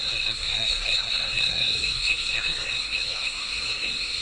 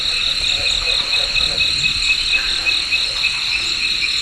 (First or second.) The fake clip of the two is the first